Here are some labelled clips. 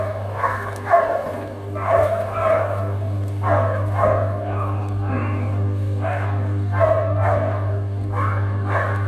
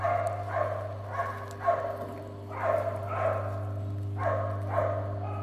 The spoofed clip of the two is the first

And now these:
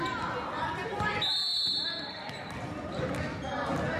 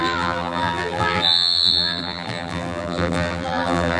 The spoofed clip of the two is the second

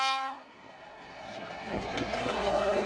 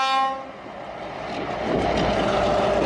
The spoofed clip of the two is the first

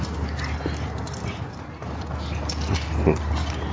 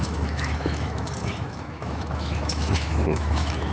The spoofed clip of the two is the second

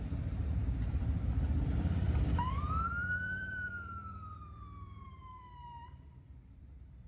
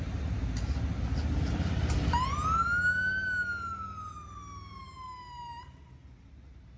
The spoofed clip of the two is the first